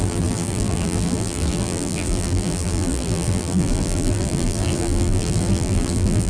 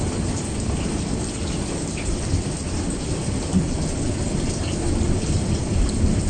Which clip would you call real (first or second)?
second